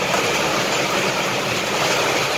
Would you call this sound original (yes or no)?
no